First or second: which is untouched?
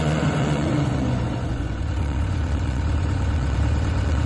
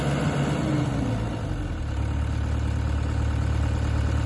second